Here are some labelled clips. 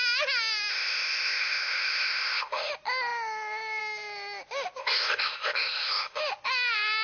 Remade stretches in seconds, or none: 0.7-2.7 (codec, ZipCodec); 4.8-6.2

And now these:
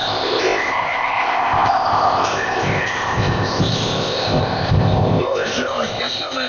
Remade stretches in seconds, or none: 0.0-6.5 (codec, ZipCodec)